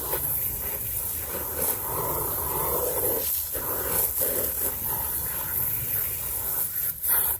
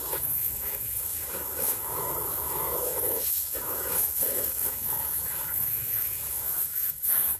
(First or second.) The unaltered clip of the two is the first